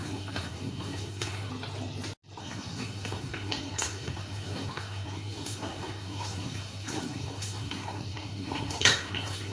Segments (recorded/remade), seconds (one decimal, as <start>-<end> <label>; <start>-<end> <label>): 0.0-1.5 remade; 1.5-2.4 recorded; 2.4-9.5 remade